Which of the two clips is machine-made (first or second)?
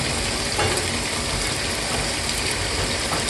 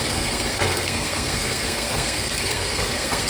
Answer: second